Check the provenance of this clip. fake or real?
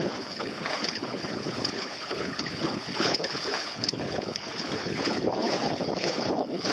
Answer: fake